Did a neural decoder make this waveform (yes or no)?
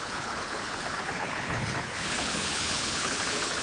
yes